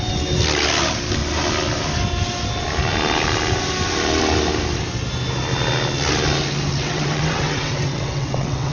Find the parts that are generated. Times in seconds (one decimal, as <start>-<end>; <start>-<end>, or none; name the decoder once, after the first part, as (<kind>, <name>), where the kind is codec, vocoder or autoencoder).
6.7-8.7 (vocoder, WaveNeXt)